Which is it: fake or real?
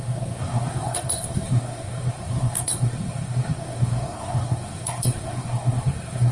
fake